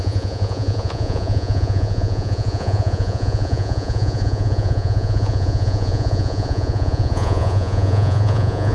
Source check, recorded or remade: remade